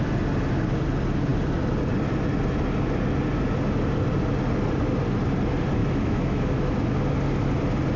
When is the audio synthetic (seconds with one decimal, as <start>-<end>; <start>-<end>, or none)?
5.8-6.7